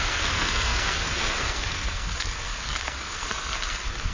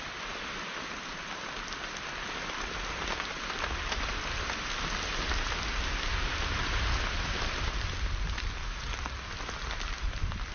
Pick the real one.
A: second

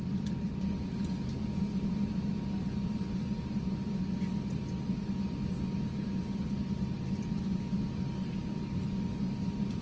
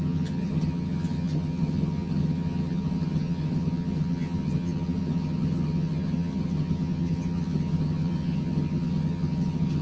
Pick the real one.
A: first